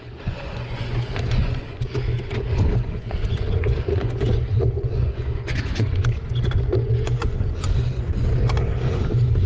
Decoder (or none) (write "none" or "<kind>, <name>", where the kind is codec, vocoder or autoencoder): vocoder, Vocos